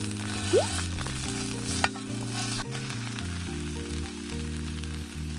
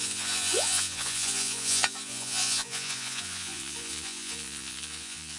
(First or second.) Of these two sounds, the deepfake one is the second